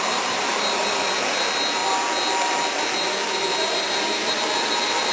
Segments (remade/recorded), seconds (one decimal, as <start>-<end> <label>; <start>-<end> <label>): 0.0-5.1 recorded